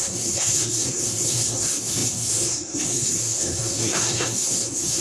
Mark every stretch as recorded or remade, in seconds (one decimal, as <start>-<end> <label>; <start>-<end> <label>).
0.0-5.0 remade